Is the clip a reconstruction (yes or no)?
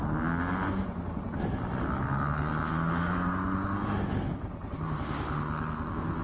no